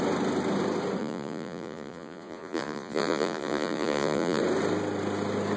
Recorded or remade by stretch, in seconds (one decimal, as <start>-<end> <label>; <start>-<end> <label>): 0.0-1.0 recorded; 1.0-4.4 remade; 4.4-5.6 recorded